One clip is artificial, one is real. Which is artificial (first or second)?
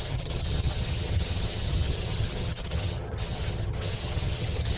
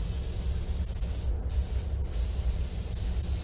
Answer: first